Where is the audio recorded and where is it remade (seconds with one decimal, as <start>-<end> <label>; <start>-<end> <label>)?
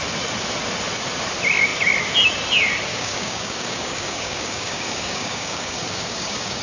0.0-2.9 recorded; 2.9-6.6 remade